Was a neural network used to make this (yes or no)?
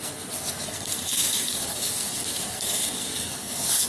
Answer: yes